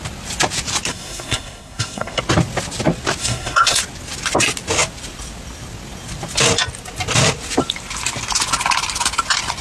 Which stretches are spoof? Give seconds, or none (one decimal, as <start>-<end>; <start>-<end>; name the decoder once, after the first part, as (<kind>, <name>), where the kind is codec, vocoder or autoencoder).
0.9-2.2 (codec, SNAC); 3.2-3.8